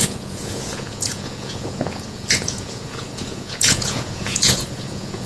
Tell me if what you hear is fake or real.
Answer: fake